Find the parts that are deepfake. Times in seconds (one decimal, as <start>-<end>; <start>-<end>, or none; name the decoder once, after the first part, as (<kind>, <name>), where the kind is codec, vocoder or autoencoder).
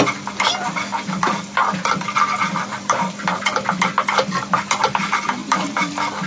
2.7-3.4 (vocoder, BigVGAN v2); 5.4-6.3